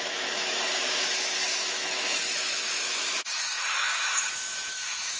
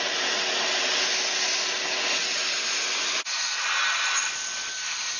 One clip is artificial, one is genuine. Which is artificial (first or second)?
first